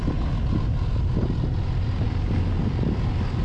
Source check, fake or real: real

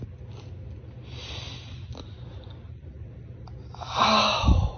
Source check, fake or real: real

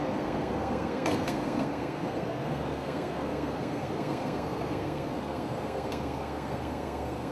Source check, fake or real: fake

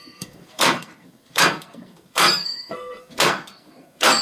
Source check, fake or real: fake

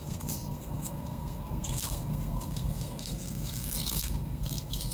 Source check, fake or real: fake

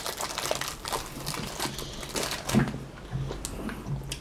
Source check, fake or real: real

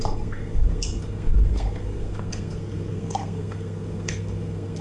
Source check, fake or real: fake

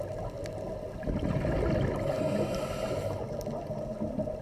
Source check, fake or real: real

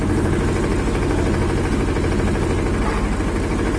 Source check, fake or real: real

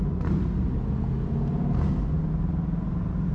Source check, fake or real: real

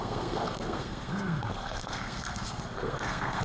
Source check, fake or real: fake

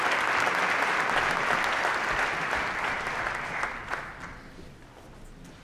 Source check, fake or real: real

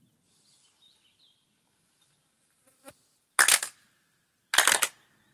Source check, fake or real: real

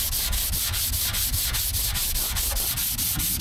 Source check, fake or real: real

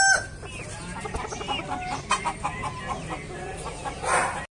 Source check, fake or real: real